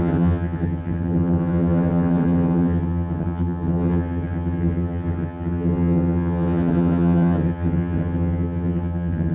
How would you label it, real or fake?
fake